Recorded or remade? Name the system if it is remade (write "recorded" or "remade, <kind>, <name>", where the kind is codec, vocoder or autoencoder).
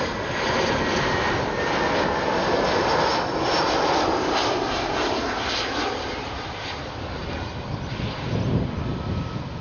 recorded